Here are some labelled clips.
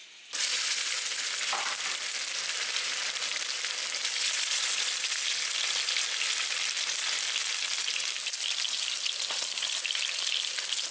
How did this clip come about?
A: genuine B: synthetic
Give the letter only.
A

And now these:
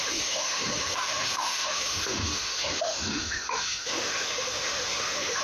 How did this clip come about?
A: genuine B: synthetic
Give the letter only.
B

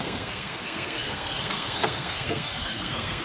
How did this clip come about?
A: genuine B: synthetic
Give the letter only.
B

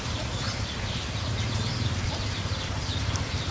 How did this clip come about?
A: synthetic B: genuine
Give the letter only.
A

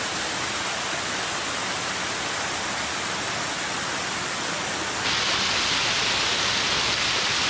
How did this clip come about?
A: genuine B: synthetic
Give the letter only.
A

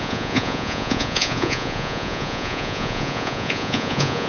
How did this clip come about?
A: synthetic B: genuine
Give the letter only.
A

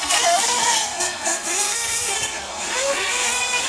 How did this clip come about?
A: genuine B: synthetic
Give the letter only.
B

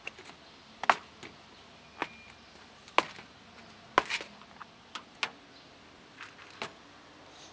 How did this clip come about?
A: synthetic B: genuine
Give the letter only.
B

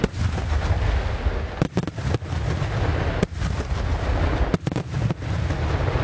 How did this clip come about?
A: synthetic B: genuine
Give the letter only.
B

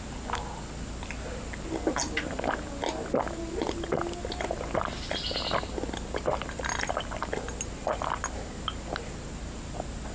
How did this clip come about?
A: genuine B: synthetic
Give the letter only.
A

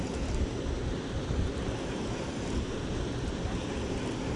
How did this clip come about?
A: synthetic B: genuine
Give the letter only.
B